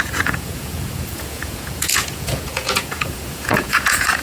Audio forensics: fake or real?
fake